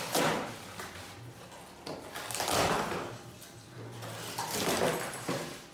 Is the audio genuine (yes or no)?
yes